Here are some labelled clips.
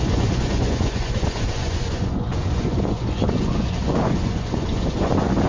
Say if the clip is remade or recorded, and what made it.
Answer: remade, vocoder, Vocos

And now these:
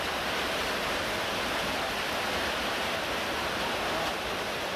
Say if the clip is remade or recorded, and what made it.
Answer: recorded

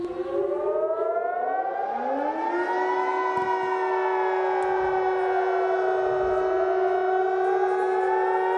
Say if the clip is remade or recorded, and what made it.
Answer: recorded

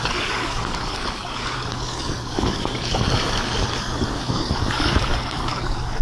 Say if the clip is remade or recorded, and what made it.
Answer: remade, codec, DAC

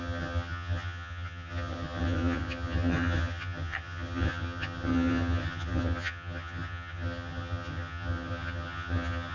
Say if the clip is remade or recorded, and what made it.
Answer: remade, vocoder, HiFi-GAN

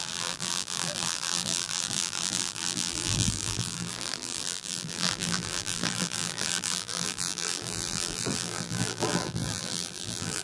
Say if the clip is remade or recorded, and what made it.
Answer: remade, vocoder, BigVGAN v2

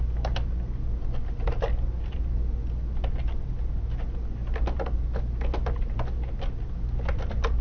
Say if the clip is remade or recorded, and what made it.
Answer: recorded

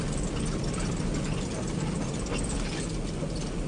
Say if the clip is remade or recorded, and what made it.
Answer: recorded